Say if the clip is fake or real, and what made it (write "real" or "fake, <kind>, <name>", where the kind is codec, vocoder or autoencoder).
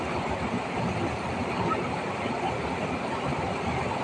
real